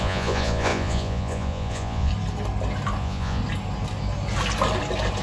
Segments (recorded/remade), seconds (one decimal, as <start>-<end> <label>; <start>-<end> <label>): 0.0-2.1 remade; 2.1-3.0 recorded; 3.0-3.4 remade; 3.4-5.2 recorded